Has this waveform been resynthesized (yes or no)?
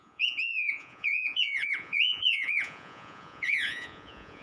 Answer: yes